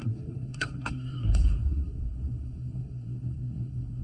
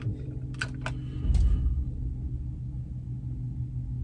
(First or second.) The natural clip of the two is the second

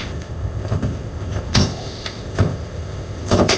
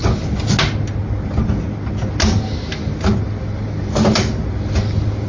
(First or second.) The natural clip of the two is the second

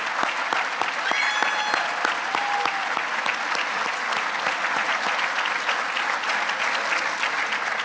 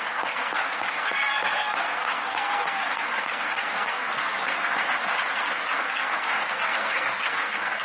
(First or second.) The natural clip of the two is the first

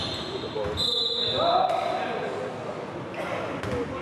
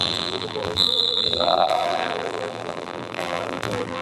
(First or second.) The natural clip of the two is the first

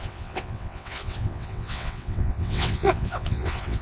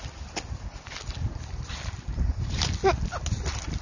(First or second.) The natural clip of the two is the second